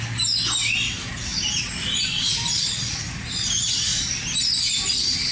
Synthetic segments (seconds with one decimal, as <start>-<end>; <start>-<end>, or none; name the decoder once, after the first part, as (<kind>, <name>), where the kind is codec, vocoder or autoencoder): none